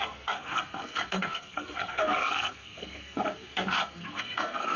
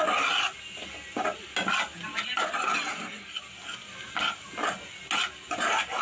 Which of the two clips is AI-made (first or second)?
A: first